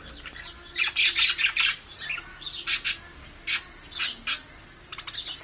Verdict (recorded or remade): recorded